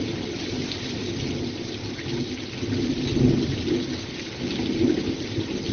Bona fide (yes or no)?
yes